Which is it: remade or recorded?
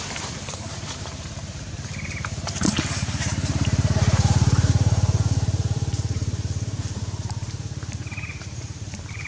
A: remade